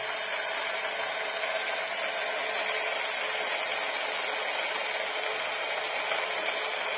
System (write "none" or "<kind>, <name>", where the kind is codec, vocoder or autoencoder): none